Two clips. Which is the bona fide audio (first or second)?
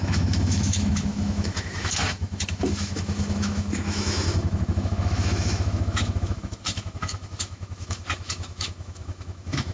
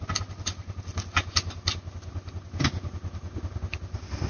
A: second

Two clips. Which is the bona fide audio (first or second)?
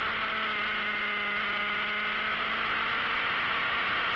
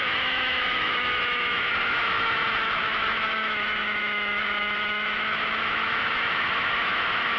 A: first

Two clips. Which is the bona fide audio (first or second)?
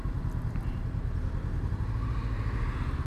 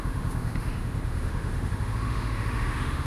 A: first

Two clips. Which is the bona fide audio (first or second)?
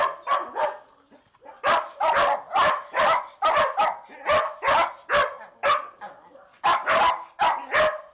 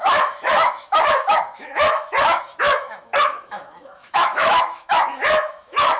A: first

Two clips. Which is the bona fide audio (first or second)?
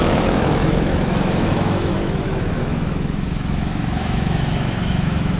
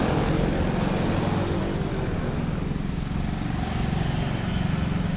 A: second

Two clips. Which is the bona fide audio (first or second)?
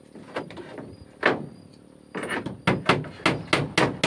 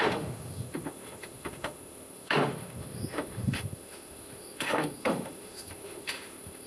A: first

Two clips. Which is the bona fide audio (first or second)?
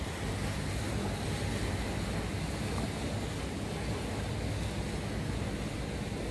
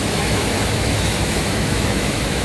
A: first